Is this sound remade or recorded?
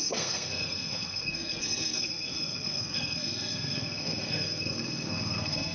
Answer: remade